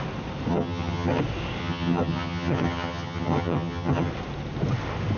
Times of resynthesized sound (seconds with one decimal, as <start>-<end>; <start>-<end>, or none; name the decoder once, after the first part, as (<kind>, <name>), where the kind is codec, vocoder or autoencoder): 0.5-1.2 (vocoder, HiFi-GAN); 1.6-4.1